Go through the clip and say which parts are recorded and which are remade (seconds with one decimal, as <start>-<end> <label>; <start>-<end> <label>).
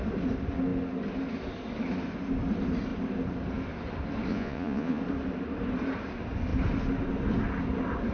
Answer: 0.0-4.3 recorded; 4.3-5.0 remade; 5.0-8.1 recorded